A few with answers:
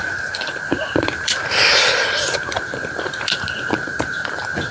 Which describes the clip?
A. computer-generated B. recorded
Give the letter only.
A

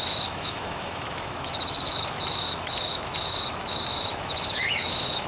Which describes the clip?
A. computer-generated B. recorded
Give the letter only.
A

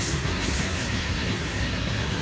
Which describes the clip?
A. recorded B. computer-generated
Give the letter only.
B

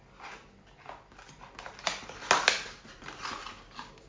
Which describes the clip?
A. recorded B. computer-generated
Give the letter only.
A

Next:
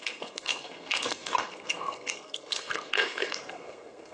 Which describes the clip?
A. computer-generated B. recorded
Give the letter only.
A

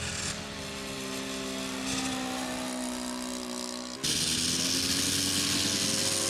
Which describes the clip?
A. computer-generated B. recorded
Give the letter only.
B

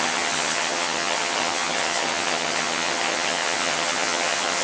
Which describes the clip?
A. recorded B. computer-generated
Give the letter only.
B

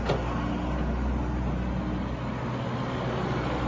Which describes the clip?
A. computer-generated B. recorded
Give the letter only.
B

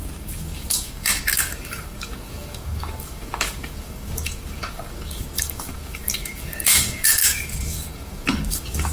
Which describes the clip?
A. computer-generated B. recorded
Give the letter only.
A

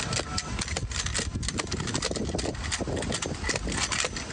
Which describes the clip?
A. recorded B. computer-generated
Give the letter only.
A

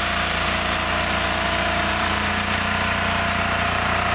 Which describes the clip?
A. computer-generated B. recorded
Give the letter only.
A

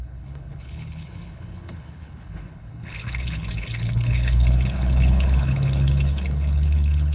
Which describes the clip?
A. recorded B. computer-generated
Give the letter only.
B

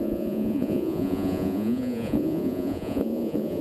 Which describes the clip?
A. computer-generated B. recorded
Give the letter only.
A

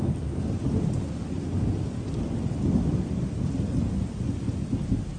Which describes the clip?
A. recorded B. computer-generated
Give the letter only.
A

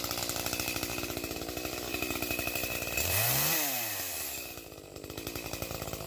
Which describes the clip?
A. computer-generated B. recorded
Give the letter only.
A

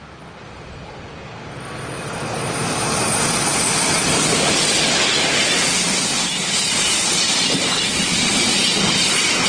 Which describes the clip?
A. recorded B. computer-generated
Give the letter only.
A